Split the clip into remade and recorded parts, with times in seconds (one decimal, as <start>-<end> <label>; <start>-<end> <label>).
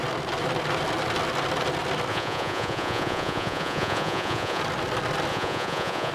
0.0-2.1 recorded; 2.1-4.6 remade; 4.6-5.3 recorded; 5.3-6.1 remade